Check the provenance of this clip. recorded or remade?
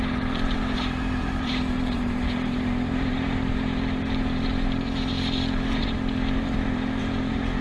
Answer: remade